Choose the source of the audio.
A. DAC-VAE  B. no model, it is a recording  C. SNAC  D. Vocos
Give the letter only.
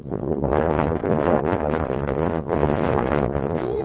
D